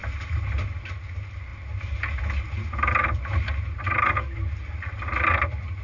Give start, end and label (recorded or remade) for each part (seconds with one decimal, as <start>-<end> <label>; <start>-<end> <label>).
0.0-5.8 recorded